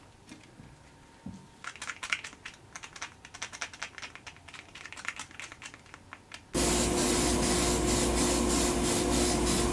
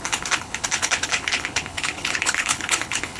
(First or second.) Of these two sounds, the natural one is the first